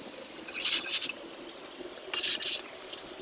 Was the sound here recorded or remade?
recorded